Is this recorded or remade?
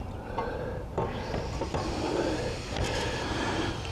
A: remade